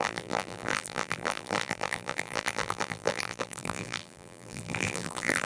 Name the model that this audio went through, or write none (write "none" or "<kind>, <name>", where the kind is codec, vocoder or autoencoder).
vocoder, BigVGAN v2